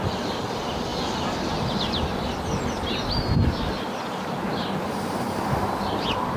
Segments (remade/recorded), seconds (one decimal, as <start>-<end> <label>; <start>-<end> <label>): 0.0-6.4 recorded